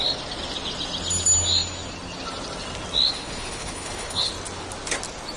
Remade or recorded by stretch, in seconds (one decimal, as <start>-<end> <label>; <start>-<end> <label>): 0.0-3.1 recorded; 3.1-4.3 remade; 4.3-5.4 recorded